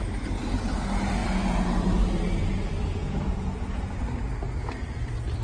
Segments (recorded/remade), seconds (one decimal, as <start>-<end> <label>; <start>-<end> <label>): 0.0-3.0 recorded; 3.0-3.8 remade; 3.8-5.4 recorded